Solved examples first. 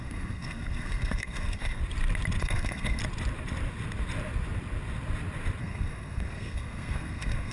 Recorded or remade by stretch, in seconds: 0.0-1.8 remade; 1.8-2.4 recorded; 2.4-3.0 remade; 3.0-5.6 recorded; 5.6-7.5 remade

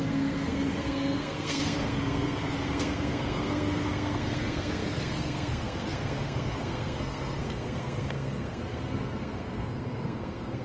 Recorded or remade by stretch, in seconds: 0.0-10.6 remade

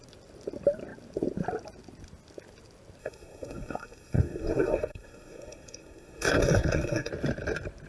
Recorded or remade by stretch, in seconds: 0.0-3.0 recorded; 3.0-7.1 remade; 7.1-7.9 recorded

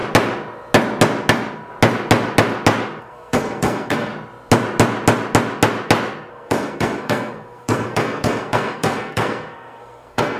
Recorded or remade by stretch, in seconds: 0.0-3.0 recorded; 3.0-4.1 remade; 4.1-6.3 recorded; 6.3-10.4 remade

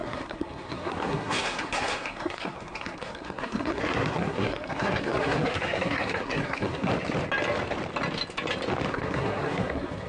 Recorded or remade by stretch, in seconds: 0.0-6.9 remade; 6.9-8.9 recorded; 8.9-10.1 remade

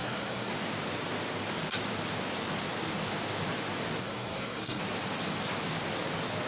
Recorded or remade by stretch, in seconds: 0.0-0.5 remade; 0.5-4.0 recorded; 4.0-4.8 remade; 4.8-6.5 recorded

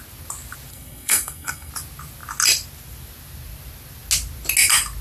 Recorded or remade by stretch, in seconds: 0.0-0.7 recorded; 0.7-1.7 remade; 1.7-5.0 recorded

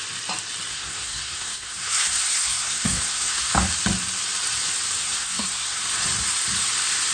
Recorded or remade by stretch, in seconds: 0.0-0.7 recorded; 0.7-3.5 remade; 3.5-5.0 recorded; 5.0-5.8 remade; 5.8-7.1 recorded